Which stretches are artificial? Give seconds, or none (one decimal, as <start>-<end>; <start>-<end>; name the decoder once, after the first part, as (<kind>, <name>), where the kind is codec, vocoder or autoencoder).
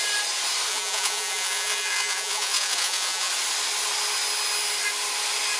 0.7-3.3 (vocoder, Vocos)